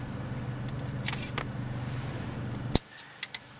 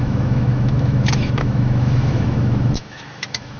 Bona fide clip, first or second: first